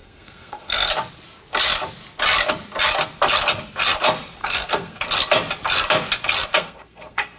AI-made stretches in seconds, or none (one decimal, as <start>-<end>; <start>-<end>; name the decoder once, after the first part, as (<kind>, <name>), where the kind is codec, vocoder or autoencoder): 0.0-0.9 (codec, SNAC); 4.4-5.0; 6.5-7.4